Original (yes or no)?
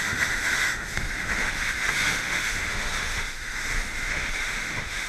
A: no